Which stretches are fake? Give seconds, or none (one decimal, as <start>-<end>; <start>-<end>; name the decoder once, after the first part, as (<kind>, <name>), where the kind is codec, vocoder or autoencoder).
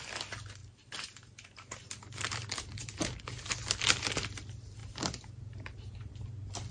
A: 0.6-3.2 (vocoder, BigVGAN v2); 4.8-6.3